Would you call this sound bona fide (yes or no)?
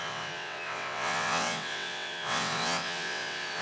no